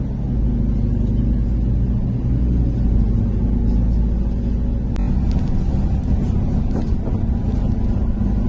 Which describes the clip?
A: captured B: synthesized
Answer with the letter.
A